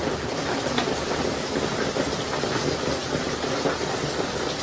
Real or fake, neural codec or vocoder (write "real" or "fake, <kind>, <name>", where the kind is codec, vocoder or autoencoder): real